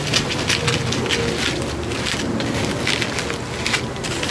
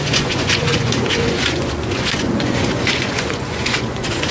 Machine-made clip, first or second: second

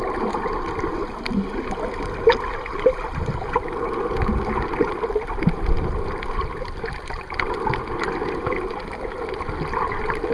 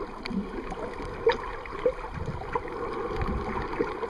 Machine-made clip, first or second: second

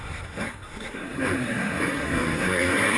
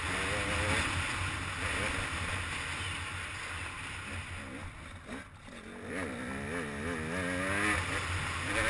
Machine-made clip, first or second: first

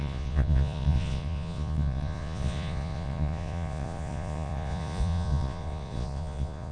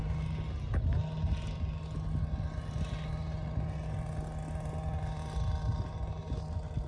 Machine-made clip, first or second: first